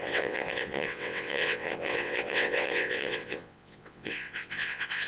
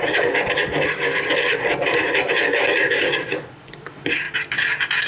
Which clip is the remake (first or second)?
first